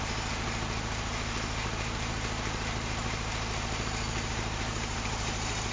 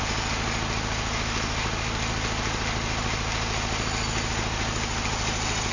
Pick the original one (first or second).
second